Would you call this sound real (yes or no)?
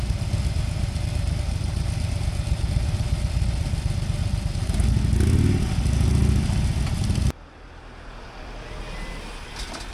yes